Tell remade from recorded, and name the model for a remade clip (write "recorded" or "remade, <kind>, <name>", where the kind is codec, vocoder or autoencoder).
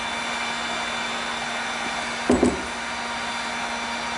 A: recorded